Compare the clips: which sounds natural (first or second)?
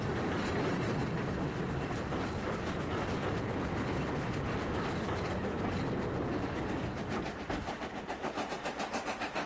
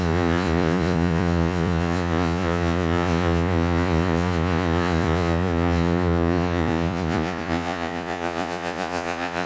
first